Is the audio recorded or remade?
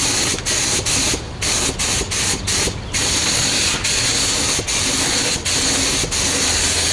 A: recorded